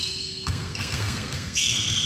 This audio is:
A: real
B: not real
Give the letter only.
B